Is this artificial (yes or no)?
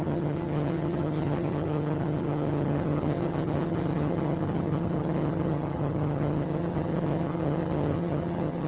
yes